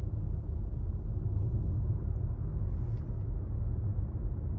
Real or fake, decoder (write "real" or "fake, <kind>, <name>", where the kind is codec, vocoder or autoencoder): real